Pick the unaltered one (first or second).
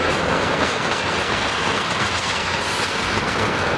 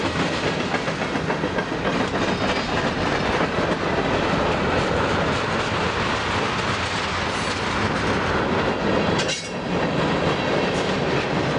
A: second